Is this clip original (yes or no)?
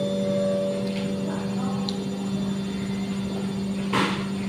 yes